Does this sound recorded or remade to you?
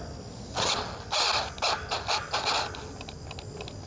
recorded